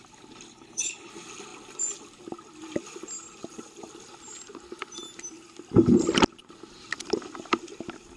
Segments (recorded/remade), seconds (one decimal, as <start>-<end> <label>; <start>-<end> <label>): 0.0-0.5 recorded; 0.5-1.1 remade; 1.1-8.2 recorded